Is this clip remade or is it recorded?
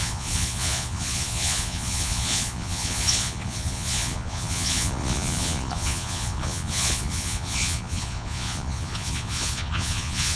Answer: remade